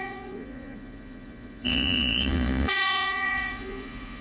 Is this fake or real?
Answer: fake